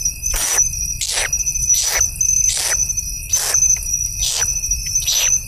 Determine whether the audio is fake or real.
real